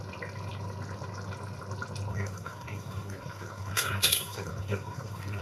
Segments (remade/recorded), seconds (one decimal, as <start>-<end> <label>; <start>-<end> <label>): 0.0-2.1 recorded; 2.1-5.4 remade